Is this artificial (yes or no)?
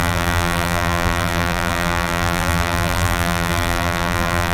yes